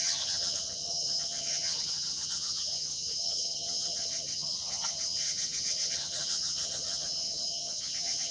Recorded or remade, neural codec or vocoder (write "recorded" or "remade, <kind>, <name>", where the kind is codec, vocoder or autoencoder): remade, vocoder, HiFi-GAN